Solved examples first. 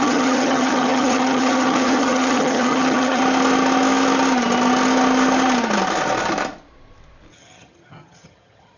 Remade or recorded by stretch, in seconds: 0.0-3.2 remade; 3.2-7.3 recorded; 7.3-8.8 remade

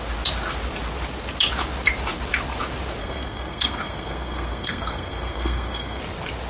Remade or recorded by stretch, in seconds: 0.0-3.0 recorded; 3.0-6.0 remade; 6.0-6.5 recorded

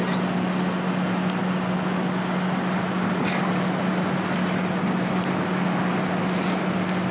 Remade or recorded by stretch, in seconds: 0.0-7.1 recorded

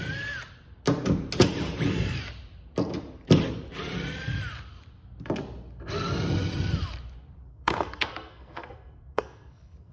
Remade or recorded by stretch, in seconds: 0.0-7.5 recorded; 7.5-9.9 remade